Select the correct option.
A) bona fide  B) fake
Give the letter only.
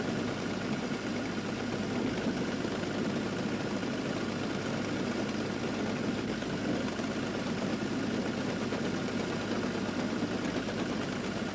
A